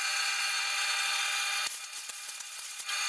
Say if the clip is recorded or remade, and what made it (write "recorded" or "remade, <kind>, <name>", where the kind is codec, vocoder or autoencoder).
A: remade, vocoder, Vocos